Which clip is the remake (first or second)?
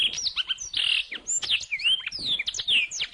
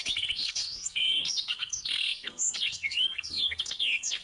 second